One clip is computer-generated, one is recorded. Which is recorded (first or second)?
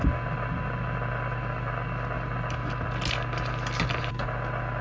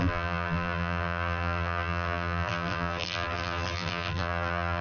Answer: first